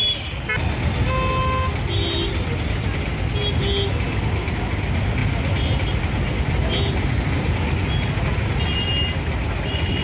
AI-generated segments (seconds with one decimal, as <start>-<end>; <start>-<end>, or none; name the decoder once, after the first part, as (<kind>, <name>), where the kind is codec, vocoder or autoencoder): none